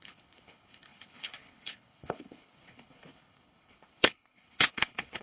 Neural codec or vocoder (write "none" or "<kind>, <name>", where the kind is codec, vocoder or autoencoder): codec, HILCodec